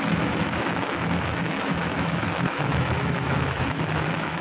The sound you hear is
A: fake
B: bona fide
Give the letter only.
A